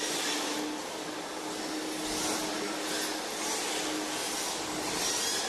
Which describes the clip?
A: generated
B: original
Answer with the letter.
B